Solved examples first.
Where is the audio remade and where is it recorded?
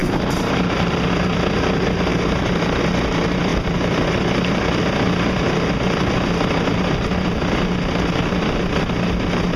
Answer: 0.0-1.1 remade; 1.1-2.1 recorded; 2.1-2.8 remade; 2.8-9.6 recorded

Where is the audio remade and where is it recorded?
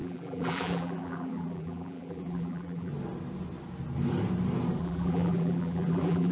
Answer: 0.0-2.9 remade; 2.9-4.8 recorded; 4.8-6.3 remade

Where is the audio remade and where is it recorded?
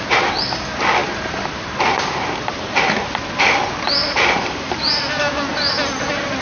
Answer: 0.0-1.0 recorded; 1.0-3.1 remade; 3.1-4.0 recorded; 4.0-4.7 remade; 4.7-6.4 recorded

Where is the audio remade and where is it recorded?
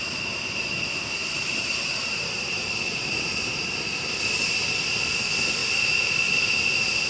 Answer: 0.0-1.2 recorded; 1.2-4.4 remade; 4.4-5.6 recorded; 5.6-6.2 remade; 6.2-7.1 recorded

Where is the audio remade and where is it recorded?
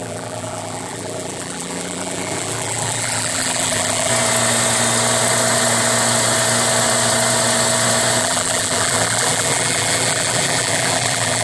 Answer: 0.0-4.1 remade; 4.1-8.2 recorded; 8.2-11.4 remade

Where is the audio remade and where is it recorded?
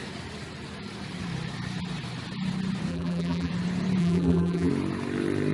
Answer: 0.0-2.9 recorded; 2.9-3.5 remade; 3.5-4.0 recorded; 4.0-4.7 remade; 4.7-5.5 recorded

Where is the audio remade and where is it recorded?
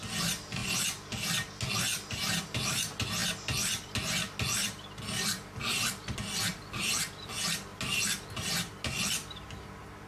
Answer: 0.0-10.1 recorded